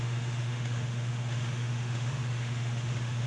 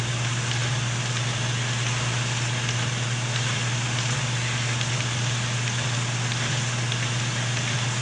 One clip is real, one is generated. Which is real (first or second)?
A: second